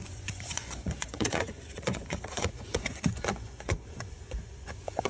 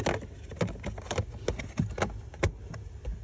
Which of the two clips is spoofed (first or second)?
first